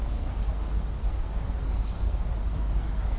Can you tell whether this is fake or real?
fake